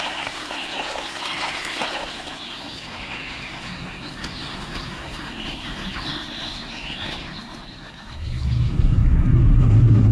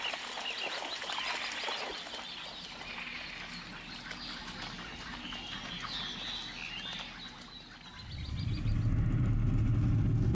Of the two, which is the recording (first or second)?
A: second